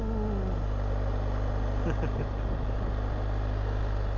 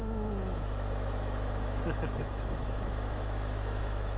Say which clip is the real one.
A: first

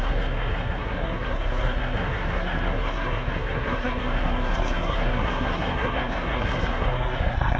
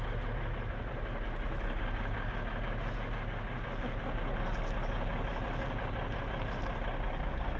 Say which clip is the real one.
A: second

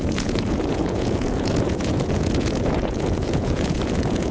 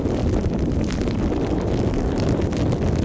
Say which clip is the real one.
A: second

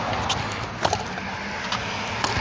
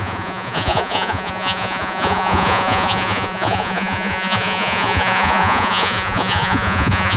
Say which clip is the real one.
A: first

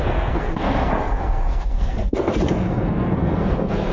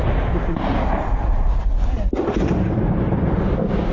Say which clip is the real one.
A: second